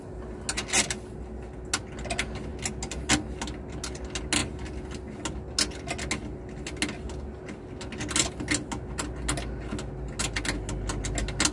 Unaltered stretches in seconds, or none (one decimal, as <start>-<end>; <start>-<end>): 0.0-11.5